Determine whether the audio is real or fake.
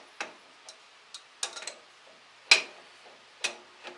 real